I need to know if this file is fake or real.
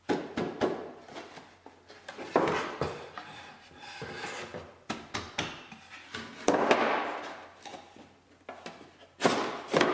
real